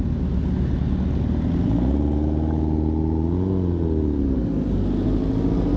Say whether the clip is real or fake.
real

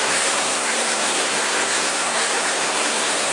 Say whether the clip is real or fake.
fake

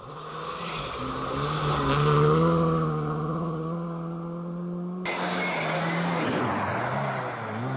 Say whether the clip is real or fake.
real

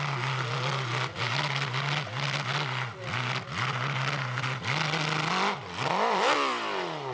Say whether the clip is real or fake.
real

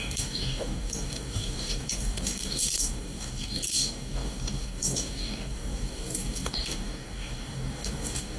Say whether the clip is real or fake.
fake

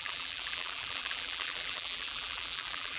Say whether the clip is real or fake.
fake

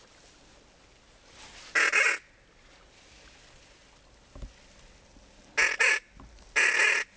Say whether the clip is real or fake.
real